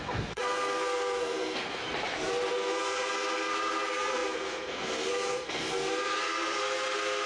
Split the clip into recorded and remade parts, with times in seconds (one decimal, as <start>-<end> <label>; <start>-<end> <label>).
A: 0.0-1.8 remade; 1.8-2.5 recorded; 2.5-7.3 remade